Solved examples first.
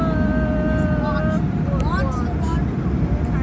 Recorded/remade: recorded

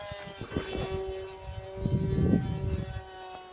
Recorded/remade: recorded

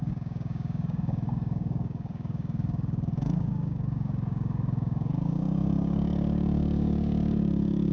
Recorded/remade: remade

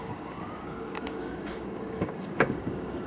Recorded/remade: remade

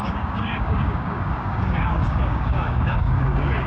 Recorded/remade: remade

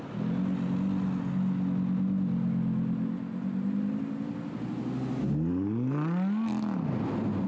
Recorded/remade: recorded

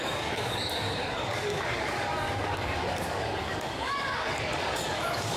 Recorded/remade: remade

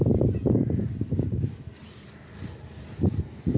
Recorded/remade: recorded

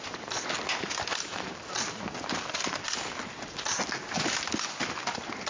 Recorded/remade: recorded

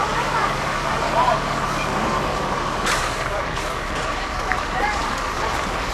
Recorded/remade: remade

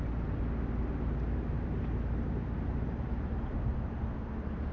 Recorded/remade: recorded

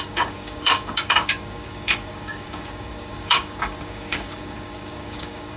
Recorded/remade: remade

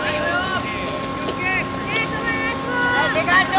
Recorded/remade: recorded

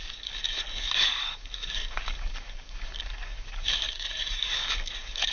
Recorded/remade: remade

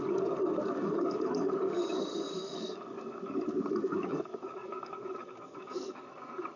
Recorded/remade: remade